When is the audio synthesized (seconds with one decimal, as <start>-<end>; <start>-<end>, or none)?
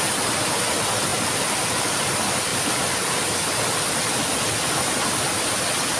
none